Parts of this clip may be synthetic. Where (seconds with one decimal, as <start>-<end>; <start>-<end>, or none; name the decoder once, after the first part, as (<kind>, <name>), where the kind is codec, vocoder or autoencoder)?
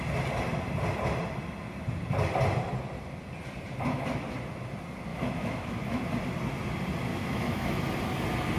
5.1-6.0 (autoencoder, DAC-VAE); 7.1-7.8